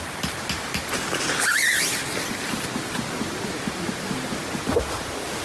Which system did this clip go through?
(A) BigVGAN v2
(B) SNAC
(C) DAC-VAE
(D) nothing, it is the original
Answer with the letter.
D